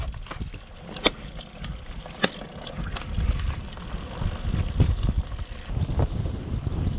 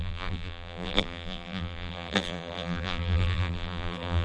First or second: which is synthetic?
second